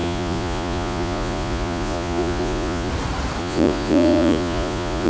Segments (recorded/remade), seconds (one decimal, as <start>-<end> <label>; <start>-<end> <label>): 0.0-2.9 remade; 2.9-3.4 recorded; 3.4-5.1 remade